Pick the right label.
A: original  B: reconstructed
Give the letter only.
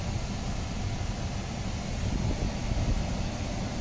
A